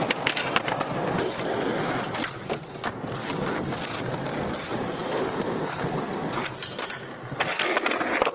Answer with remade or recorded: recorded